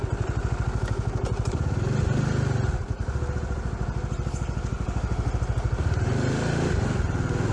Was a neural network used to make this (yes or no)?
no